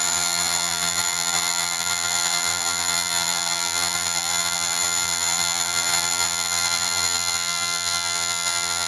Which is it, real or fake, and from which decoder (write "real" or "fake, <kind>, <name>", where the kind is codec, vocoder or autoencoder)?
fake, vocoder, BigVGAN v2